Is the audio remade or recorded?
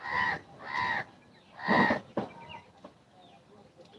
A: recorded